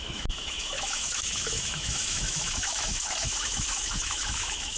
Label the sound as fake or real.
fake